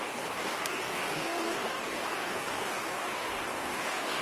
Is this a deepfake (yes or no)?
yes